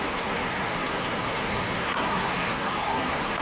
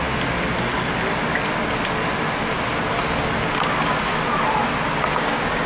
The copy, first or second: first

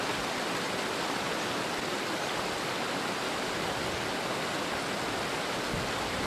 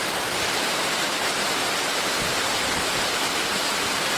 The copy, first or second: second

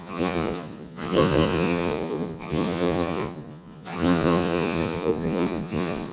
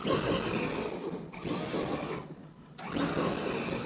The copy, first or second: first